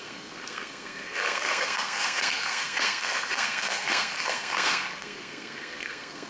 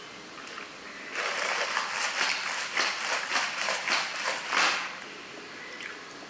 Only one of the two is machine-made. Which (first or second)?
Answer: first